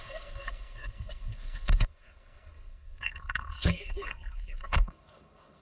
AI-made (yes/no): yes